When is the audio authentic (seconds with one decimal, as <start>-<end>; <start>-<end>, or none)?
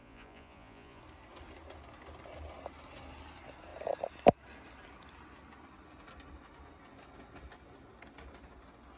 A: 1.0-9.0